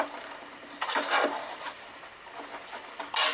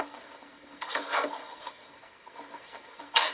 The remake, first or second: second